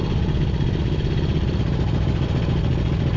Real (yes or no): yes